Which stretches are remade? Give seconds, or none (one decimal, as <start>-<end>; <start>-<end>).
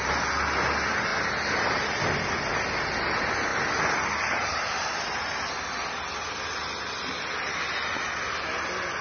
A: 3.5-6.8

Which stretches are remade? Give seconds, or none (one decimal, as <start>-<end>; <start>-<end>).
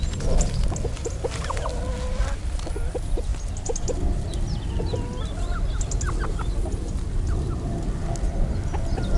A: 1.0-1.7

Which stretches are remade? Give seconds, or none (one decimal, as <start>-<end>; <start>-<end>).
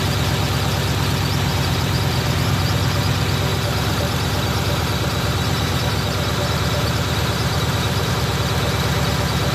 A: 1.5-2.7; 3.5-8.1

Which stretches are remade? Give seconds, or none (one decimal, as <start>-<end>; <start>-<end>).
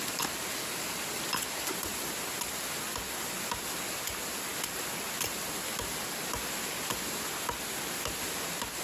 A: none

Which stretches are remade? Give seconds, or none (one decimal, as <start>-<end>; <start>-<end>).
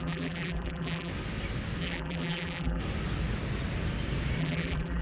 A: 0.0-1.1; 1.8-2.8; 4.4-5.0